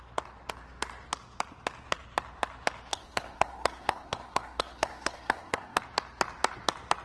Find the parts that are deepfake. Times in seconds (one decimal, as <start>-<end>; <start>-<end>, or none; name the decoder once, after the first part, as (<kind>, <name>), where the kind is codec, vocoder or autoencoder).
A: 2.9-5.8 (codec, SNAC)